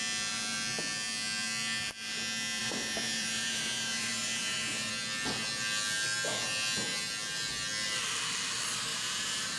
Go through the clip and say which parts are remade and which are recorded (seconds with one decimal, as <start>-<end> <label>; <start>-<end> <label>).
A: 0.0-2.6 recorded; 2.6-4.9 remade; 4.9-8.9 recorded; 8.9-9.6 remade